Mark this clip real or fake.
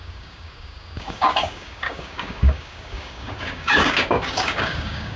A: fake